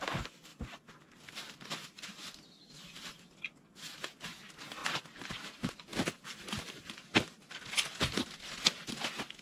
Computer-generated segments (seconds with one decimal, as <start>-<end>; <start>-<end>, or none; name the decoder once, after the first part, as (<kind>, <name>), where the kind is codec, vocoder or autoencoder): 0.5-2.3 (vocoder, BigVGAN v2); 5.9-7.7